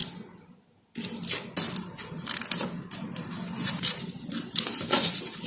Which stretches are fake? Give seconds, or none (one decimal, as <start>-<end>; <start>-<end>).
none